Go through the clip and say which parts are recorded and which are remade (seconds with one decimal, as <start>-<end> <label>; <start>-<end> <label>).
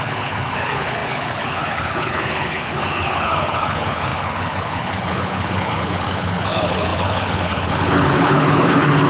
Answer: 0.0-9.1 remade